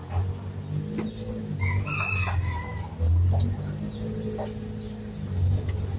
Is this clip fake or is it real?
real